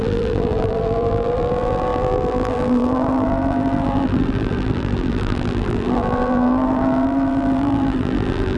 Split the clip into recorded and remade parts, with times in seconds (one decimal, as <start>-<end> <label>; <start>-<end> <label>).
0.0-8.6 remade